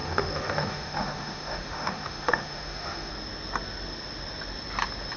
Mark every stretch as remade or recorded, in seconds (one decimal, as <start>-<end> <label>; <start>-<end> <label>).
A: 0.0-3.1 remade; 3.1-5.2 recorded